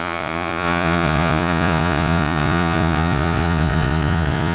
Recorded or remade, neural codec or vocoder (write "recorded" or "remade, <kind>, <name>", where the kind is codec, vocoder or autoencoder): remade, vocoder, Vocos